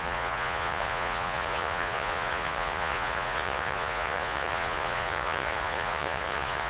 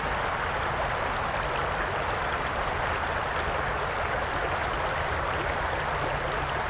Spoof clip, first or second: first